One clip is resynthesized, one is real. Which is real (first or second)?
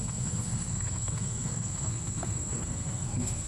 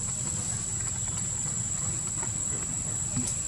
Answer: second